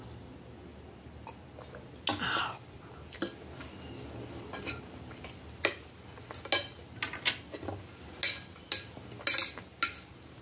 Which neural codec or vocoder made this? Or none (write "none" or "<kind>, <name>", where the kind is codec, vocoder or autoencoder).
none